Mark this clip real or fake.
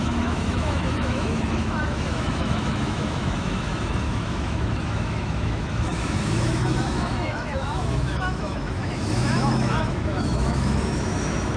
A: fake